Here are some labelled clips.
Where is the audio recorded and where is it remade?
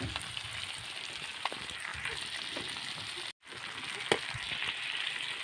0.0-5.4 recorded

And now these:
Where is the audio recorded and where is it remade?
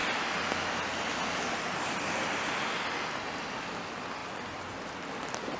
0.0-4.2 recorded; 4.2-4.9 remade; 4.9-5.6 recorded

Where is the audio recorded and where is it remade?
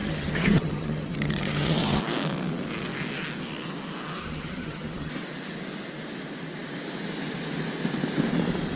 0.0-2.0 remade; 2.0-4.2 recorded; 4.2-5.1 remade; 5.1-8.8 recorded